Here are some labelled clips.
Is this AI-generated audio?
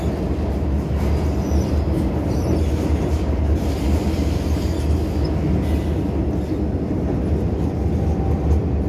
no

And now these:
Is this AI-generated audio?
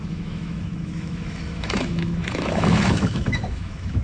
yes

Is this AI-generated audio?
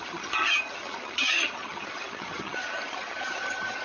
yes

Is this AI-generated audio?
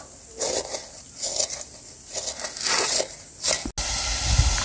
no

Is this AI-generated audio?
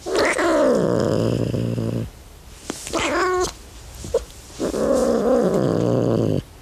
no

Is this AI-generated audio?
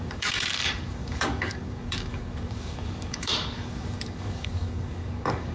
yes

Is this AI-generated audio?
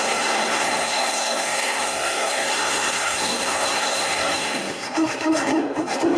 yes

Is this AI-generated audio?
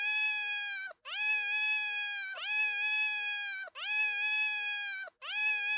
no